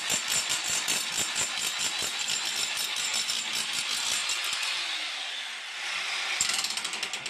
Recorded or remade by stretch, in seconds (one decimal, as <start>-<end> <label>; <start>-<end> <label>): 0.0-7.3 recorded